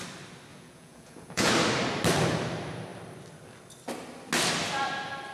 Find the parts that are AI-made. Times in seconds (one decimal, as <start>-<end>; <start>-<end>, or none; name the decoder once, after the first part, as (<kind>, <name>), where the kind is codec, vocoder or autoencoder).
0.5-1.5 (vocoder, Vocos)